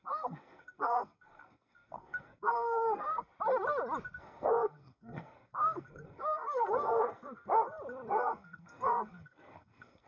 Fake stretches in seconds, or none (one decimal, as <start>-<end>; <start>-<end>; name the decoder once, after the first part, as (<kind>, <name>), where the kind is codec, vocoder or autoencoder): 0.0-3.3 (codec, SNAC); 4.2-7.5; 8.1-10.1